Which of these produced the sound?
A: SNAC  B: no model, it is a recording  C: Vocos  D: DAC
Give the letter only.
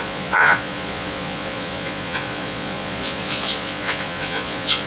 C